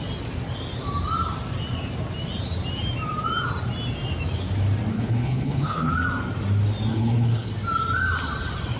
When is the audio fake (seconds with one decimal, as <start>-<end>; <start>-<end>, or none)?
4.9-5.9; 6.9-7.5